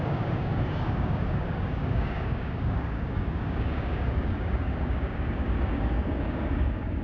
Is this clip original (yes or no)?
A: no